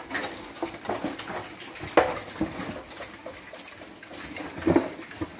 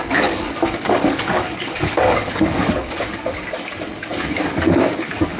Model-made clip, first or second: second